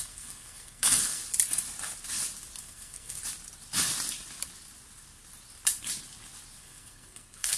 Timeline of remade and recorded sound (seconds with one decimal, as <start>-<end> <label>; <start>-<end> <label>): 0.0-1.2 remade; 1.2-2.6 recorded; 2.6-3.2 remade; 3.2-6.6 recorded; 6.6-7.6 remade